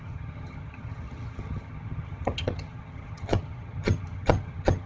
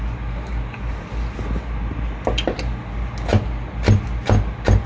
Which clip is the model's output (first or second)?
first